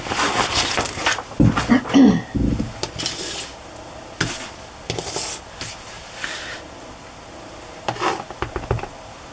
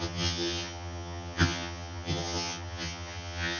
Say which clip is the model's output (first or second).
second